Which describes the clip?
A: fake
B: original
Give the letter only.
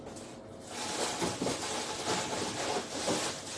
B